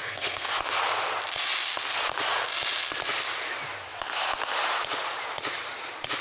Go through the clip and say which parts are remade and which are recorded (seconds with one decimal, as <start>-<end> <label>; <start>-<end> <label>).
0.0-0.5 remade; 0.5-6.2 recorded